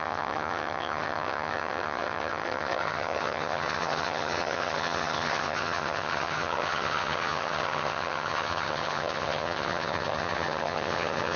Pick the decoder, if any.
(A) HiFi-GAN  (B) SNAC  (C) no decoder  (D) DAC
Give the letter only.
A